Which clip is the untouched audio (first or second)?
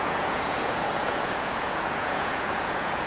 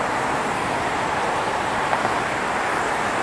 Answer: second